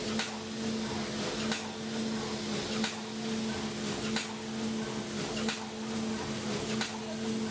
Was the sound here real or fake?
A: real